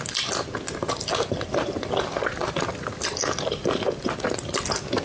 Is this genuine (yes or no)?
yes